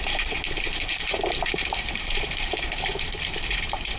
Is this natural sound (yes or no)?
no